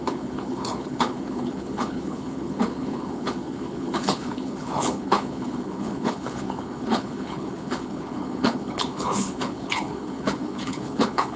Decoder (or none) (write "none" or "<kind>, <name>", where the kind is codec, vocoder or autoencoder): codec, HILCodec